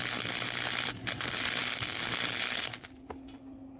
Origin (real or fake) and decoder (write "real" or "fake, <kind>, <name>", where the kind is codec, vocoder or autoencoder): real